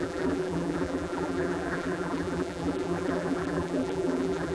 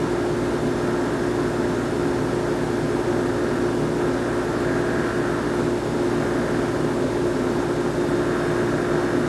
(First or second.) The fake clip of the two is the first